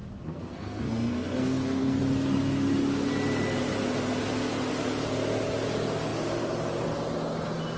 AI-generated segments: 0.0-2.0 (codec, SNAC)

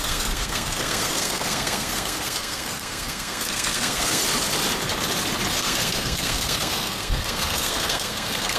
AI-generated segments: 0.0-4.2 (codec, SNAC); 5.5-8.6

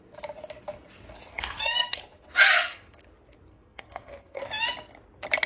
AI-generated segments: 1.3-2.0 (codec, SNAC); 2.4-3.0; 3.5-4.4

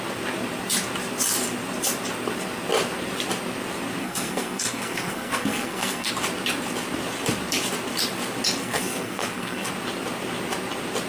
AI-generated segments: 4.0-6.1 (codec, SNAC); 8.6-9.7

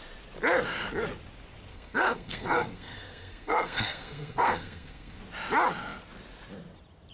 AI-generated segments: 1.7-5.2 (codec, SNAC)

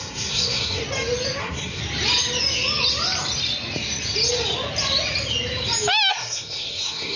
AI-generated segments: 0.0-0.8 (codec, SNAC); 1.4-1.8; 6.1-7.2

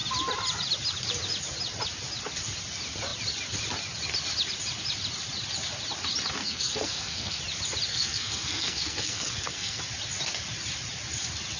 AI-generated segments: 6.4-7.4 (codec, SNAC); 7.9-9.8

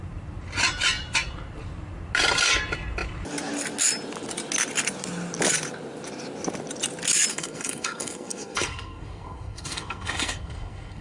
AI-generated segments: 7.3-11.0 (codec, SNAC)